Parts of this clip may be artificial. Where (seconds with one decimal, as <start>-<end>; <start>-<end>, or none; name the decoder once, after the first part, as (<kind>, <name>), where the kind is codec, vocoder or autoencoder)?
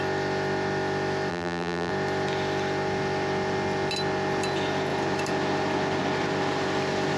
1.3-1.9 (vocoder, BigVGAN v2)